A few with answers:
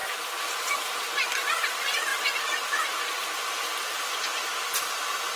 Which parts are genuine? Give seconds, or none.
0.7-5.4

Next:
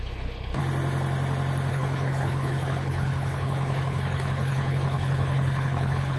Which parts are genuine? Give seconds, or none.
0.6-1.7

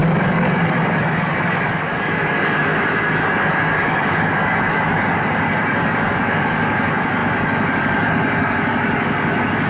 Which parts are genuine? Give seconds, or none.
none